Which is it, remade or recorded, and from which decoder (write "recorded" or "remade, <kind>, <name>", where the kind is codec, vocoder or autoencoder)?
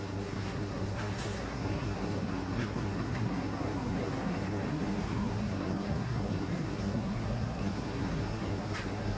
remade, codec, SNAC